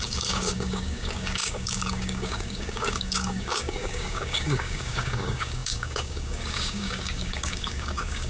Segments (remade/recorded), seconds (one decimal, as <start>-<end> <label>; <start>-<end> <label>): 0.0-8.3 remade

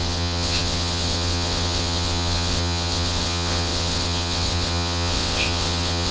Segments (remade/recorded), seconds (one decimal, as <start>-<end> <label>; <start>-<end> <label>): 0.0-6.1 remade

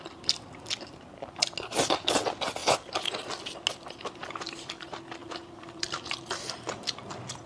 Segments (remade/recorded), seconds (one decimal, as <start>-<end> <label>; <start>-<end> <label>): 0.0-5.2 recorded; 5.2-6.1 remade; 6.1-7.5 recorded

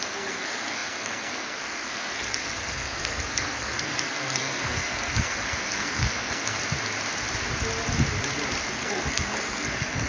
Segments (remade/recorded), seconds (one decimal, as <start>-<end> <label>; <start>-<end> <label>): 0.0-6.6 remade; 6.6-8.7 recorded; 8.7-10.1 remade